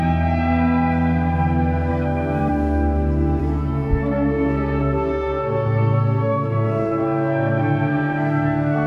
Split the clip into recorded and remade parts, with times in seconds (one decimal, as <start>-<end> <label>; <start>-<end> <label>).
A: 0.0-1.9 recorded; 1.9-2.5 remade; 2.5-3.4 recorded; 3.4-8.9 remade